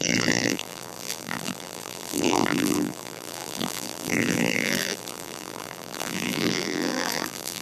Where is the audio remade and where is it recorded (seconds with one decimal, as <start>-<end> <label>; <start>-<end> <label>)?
0.0-7.6 remade